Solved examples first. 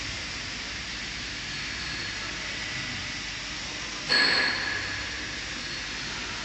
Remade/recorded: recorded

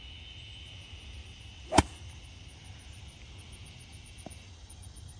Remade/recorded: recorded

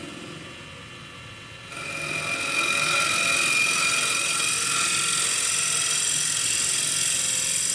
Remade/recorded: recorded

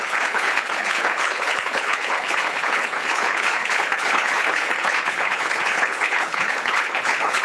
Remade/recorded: remade